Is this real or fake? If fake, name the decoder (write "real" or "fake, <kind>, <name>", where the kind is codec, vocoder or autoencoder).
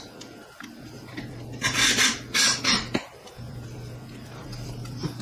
real